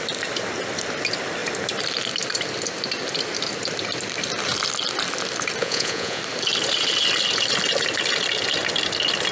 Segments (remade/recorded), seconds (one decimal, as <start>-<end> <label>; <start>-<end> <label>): 0.0-5.6 recorded; 5.6-6.2 remade; 6.2-9.3 recorded